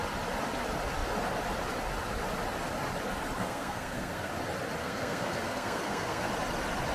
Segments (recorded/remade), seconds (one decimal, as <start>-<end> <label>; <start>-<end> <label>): 0.0-3.4 recorded; 3.4-4.3 remade; 4.3-4.8 recorded; 4.8-6.3 remade; 6.3-6.9 recorded